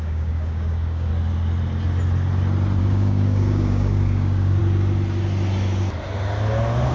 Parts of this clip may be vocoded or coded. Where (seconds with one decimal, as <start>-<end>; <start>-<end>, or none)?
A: 0.0-1.1; 2.8-4.6